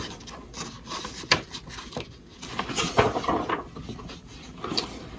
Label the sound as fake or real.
real